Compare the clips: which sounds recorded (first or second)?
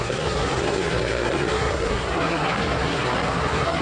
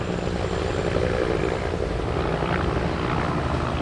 second